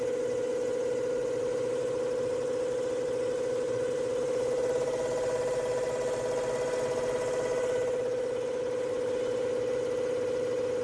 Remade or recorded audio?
recorded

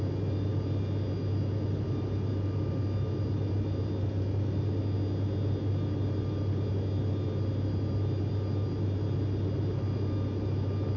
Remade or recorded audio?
recorded